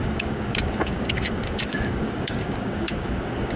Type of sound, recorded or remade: remade